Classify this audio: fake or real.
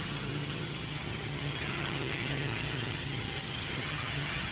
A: fake